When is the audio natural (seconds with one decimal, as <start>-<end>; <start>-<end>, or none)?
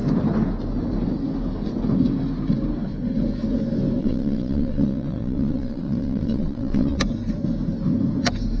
0.0-4.0; 7.0-8.6